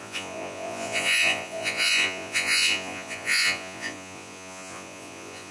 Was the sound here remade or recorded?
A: remade